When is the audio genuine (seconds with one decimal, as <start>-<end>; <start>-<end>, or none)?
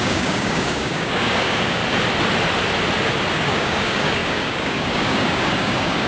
1.8-3.3